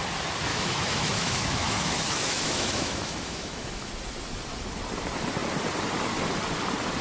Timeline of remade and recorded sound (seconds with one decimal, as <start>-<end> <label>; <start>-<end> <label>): 0.0-0.5 recorded; 0.5-3.9 remade; 3.9-7.0 recorded